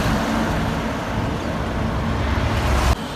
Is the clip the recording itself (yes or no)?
yes